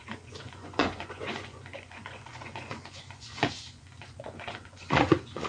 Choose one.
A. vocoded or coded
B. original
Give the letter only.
A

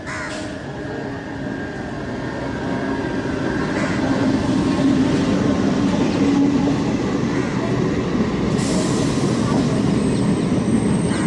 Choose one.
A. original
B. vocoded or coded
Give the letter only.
A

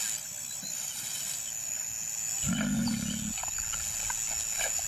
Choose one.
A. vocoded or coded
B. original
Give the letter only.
B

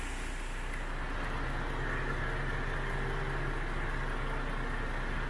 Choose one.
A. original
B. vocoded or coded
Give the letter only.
A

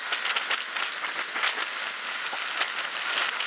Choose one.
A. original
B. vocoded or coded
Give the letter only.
A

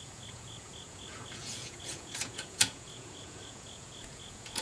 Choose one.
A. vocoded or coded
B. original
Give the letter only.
A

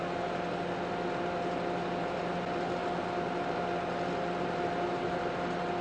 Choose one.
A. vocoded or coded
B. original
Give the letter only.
B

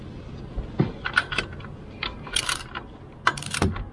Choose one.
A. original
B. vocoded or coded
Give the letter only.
A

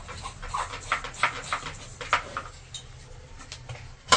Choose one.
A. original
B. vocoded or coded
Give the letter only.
A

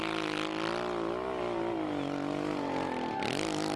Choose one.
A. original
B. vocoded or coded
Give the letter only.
A